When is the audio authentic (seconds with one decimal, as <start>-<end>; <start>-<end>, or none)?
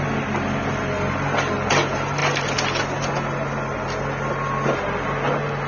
0.0-5.7